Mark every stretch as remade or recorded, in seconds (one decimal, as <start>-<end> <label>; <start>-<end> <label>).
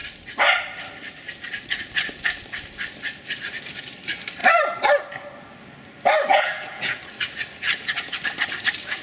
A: 0.0-6.3 recorded; 6.3-7.0 remade; 7.0-9.0 recorded